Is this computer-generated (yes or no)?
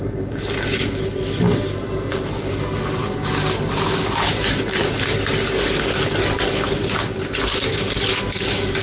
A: no